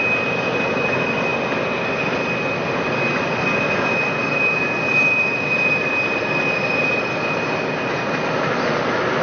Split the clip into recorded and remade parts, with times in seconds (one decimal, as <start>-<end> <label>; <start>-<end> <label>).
0.0-9.2 recorded